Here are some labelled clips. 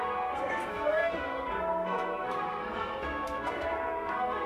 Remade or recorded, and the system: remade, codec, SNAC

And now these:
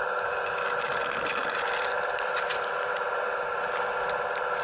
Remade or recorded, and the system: recorded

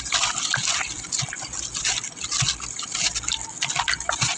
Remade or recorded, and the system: recorded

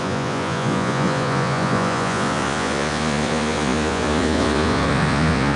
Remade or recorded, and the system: remade, vocoder, Vocos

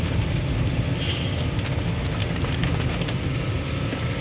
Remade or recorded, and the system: recorded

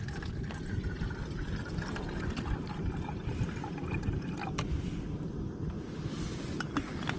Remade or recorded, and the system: recorded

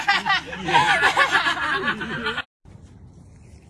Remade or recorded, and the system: recorded